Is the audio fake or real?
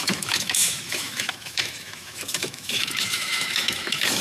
fake